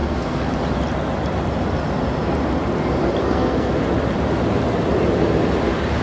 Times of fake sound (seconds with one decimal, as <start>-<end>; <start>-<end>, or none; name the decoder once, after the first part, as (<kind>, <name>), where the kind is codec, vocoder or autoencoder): 0.0-0.5 (codec, SNAC); 3.2-3.7